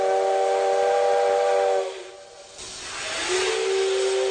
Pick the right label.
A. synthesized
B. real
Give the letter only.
B